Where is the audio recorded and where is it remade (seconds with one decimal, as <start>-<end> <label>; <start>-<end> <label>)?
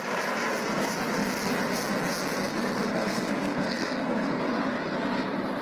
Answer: 0.0-2.5 recorded; 2.5-4.4 remade; 4.4-5.6 recorded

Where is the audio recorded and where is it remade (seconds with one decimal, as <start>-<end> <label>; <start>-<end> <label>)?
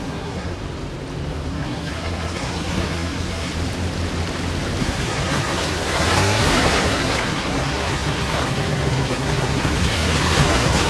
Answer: 0.0-0.6 remade; 0.6-1.5 recorded; 1.5-3.5 remade; 3.5-4.8 recorded; 4.8-10.9 remade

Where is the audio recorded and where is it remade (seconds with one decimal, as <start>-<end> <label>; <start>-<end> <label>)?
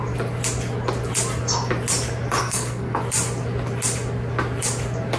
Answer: 0.0-2.4 recorded; 2.4-3.0 remade; 3.0-5.2 recorded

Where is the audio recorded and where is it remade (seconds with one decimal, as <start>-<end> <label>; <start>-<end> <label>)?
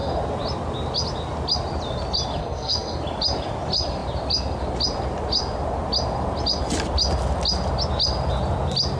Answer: 0.0-2.4 recorded; 2.4-3.0 remade; 3.0-9.0 recorded